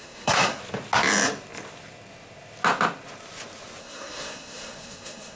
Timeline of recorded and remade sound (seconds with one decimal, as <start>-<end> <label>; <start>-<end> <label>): 0.0-0.6 remade; 0.6-3.8 recorded; 3.8-5.4 remade